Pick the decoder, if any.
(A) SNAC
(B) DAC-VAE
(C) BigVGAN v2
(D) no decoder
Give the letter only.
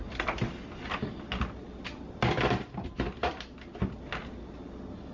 D